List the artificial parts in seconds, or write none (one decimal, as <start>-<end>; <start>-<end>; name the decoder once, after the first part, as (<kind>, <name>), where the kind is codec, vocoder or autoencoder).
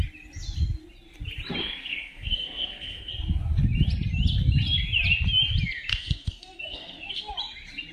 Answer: 1.6-3.1 (codec, SNAC); 5.9-7.3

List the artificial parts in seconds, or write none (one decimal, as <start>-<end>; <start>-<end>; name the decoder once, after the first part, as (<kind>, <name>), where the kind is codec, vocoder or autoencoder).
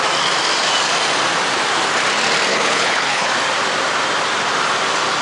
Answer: 2.5-3.3 (codec, HILCodec)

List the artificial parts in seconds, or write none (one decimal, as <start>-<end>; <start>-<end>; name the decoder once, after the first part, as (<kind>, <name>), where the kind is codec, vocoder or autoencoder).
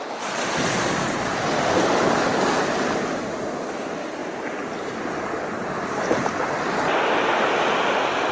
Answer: 4.2-6.1 (vocoder, BigVGAN v2)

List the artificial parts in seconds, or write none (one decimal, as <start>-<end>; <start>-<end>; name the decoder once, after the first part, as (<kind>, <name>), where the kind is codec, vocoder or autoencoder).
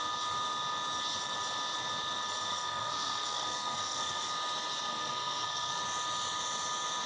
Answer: 2.5-4.3 (codec, SNAC); 4.9-5.8